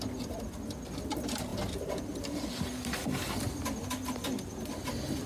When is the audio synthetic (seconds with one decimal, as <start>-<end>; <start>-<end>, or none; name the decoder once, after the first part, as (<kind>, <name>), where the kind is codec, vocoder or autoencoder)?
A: none